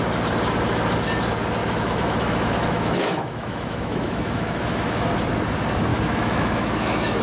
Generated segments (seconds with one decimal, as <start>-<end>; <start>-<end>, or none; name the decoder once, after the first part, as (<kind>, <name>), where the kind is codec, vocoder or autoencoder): 1.6-5.1 (autoencoder, DAC-VAE); 5.9-7.2